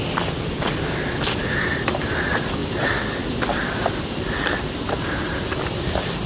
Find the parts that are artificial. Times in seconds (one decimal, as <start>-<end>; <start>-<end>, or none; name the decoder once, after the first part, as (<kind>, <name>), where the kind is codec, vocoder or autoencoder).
2.6-6.3 (vocoder, BigVGAN v2)